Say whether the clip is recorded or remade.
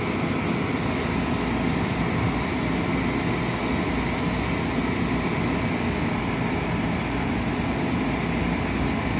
recorded